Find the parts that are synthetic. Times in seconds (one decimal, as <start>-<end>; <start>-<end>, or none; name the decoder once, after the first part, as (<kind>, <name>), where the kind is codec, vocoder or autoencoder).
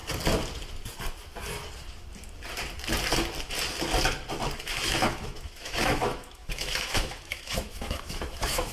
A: 4.6-8.7 (autoencoder, DAC-VAE)